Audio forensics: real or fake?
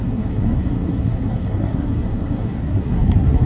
fake